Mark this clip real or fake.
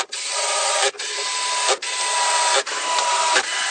real